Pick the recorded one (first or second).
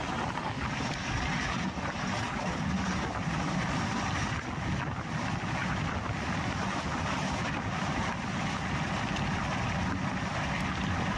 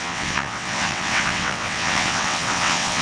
first